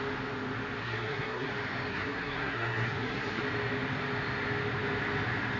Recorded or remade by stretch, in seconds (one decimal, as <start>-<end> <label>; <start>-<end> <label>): 0.0-0.8 recorded; 0.8-1.5 remade; 1.5-1.9 recorded; 1.9-3.4 remade; 3.4-5.6 recorded